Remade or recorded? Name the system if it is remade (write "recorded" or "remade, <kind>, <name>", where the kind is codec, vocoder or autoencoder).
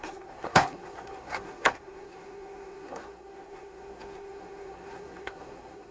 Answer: remade, codec, SNAC